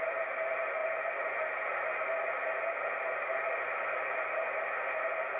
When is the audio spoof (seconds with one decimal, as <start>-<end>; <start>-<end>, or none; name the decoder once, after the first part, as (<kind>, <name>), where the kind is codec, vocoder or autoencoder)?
none